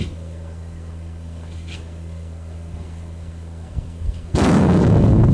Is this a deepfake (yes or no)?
yes